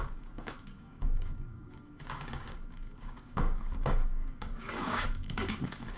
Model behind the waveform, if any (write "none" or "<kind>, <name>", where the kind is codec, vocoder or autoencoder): codec, DAC